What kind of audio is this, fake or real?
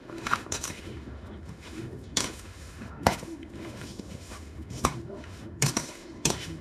fake